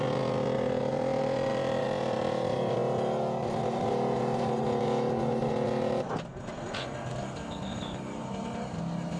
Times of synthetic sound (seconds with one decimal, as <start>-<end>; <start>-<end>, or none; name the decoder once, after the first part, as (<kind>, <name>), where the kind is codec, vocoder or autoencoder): none